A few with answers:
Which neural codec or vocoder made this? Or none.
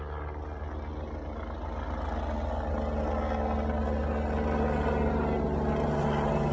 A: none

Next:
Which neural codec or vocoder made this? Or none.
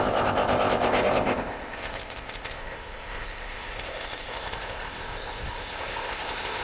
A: codec, ZipCodec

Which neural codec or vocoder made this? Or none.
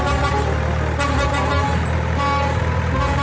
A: none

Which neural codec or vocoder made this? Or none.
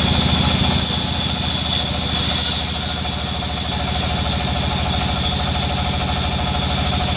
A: none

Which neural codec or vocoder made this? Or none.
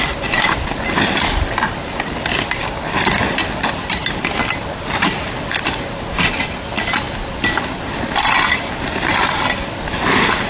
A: none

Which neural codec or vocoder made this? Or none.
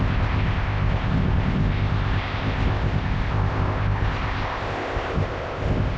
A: codec, ZipCodec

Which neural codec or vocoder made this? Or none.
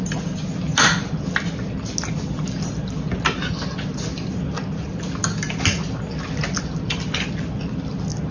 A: none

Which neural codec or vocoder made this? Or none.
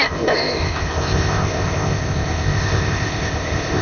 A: codec, ZipCodec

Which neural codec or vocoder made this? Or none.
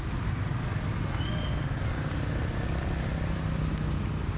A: none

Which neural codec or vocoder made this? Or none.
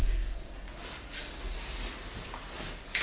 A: none